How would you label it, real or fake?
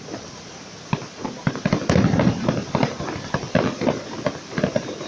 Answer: real